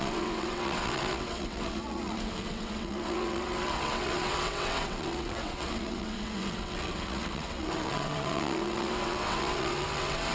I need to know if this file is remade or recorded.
remade